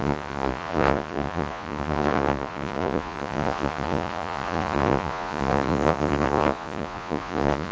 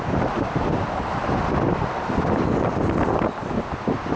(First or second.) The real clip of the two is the second